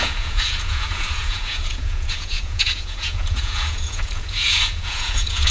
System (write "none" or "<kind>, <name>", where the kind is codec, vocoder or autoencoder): vocoder, Vocos